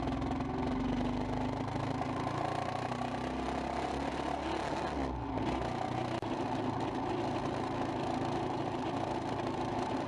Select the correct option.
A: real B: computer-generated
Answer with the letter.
A